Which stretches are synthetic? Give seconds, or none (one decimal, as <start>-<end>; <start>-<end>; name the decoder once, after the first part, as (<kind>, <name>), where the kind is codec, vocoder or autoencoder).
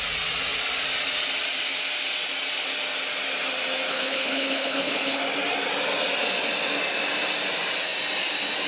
3.9-5.2 (codec, HILCodec)